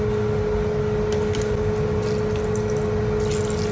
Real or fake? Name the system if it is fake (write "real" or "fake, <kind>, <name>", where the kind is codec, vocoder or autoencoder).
real